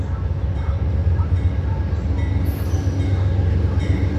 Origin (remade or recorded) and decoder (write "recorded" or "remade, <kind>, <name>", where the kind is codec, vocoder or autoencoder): recorded